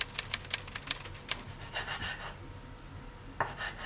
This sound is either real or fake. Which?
real